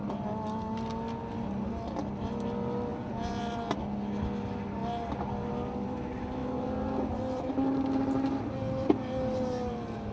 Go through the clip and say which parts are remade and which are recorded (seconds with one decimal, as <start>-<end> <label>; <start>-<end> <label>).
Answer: 0.0-2.9 recorded; 2.9-3.4 remade; 3.4-10.1 recorded